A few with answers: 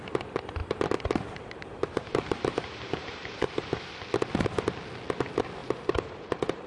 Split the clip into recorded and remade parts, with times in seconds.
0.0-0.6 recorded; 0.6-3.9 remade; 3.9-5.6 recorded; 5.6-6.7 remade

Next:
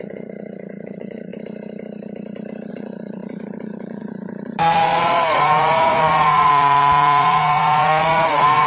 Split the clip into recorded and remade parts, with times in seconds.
0.0-1.3 remade; 1.3-2.7 recorded; 2.7-8.7 remade